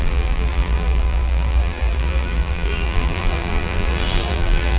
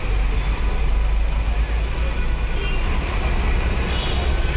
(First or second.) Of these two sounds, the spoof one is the first